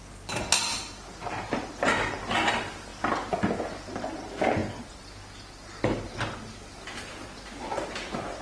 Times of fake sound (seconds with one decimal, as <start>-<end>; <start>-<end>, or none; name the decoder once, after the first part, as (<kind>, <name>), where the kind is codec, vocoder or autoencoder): none